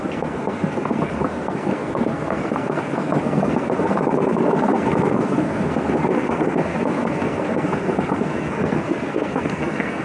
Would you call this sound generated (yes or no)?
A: yes